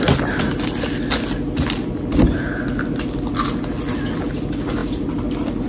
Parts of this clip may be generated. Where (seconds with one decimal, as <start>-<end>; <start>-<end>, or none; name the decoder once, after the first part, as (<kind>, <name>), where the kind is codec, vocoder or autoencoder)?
none